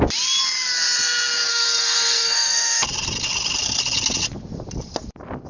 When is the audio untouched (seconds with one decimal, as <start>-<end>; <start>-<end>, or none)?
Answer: 0.0-1.5; 2.8-5.5